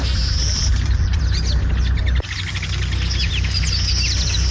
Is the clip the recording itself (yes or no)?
yes